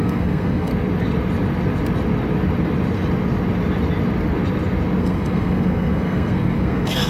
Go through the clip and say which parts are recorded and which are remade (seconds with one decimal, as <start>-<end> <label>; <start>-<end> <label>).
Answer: 0.0-0.7 remade; 0.7-5.0 recorded; 5.0-7.1 remade